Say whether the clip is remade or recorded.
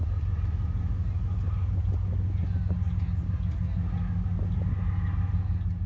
recorded